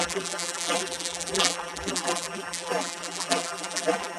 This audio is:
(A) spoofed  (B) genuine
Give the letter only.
A